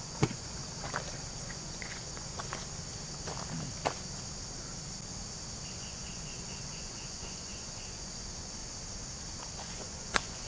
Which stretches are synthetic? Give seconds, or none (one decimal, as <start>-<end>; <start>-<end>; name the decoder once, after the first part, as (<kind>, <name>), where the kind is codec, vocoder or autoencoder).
0.0-0.6 (vocoder, Vocos); 1.4-2.6; 5.7-8.6; 9.6-10.5